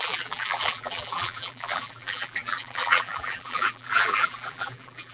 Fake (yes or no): yes